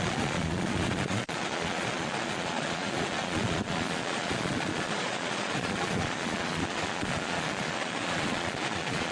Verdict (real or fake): fake